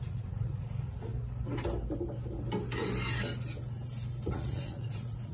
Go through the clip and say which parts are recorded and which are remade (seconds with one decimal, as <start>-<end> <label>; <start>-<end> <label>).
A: 0.0-1.1 remade; 1.1-4.3 recorded; 4.3-5.3 remade